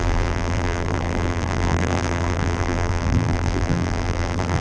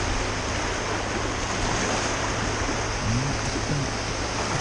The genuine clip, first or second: second